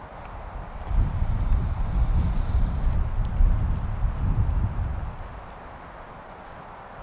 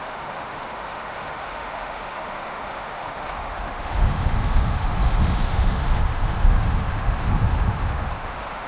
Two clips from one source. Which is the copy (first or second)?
second